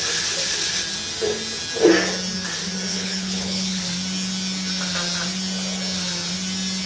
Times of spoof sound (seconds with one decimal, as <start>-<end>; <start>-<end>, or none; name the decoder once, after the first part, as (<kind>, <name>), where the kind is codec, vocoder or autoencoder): 2.9-3.9 (codec, HILCodec)

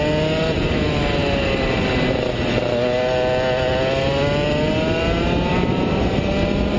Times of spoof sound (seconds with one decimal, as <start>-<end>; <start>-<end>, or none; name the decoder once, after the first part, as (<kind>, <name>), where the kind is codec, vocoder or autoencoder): none

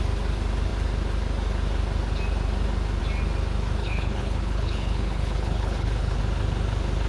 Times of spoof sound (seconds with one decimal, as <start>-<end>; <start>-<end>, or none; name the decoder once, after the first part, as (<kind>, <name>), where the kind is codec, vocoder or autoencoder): 3.8-6.2 (codec, HILCodec)

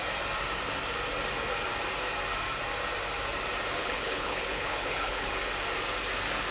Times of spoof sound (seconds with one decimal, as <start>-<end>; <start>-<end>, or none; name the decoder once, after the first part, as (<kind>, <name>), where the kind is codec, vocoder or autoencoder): 3.8-5.3 (codec, HILCodec)

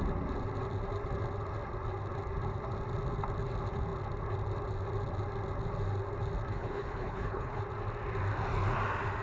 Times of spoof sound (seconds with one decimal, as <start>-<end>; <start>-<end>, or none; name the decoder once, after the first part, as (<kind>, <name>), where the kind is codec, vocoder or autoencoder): 6.5-7.6 (codec, HILCodec)

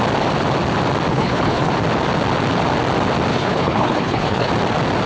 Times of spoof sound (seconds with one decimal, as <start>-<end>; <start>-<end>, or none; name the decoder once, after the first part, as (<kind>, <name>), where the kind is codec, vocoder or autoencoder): 1.1-1.7 (codec, HILCodec); 3.3-4.5

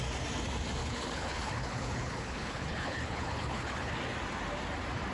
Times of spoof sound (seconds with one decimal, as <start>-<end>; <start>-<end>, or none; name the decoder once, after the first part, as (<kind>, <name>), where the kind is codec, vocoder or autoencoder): 0.8-3.9 (codec, HILCodec)

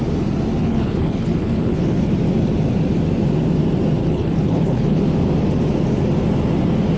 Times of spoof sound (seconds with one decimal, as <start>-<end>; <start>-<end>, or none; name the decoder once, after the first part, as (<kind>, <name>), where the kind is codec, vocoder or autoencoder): 0.6-2.1 (codec, HILCodec); 4.0-5.0